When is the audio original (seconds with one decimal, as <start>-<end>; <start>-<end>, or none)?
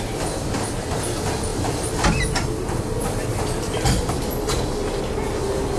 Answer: 0.0-5.8